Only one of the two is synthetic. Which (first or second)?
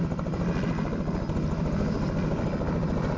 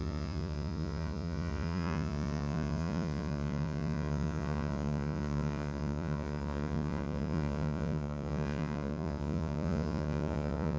second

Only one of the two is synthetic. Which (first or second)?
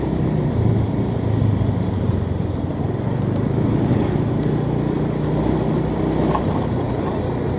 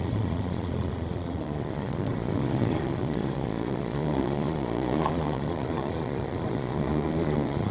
second